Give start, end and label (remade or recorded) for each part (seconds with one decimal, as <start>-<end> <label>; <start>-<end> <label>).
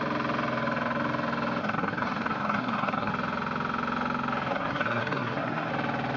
0.0-1.6 recorded; 1.6-3.1 remade; 3.1-4.5 recorded; 4.5-5.7 remade; 5.7-6.2 recorded